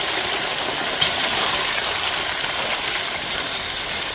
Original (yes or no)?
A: no